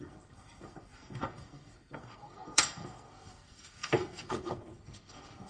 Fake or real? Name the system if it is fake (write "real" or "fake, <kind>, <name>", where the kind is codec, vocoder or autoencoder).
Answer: fake, codec, SNAC